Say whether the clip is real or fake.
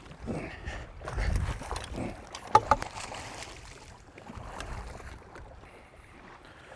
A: fake